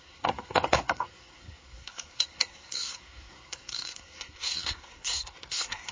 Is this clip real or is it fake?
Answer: fake